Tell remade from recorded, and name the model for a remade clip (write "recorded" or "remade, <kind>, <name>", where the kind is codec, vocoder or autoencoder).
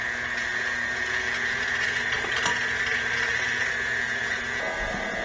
recorded